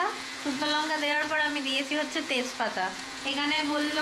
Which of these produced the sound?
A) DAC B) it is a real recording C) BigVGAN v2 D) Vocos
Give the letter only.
D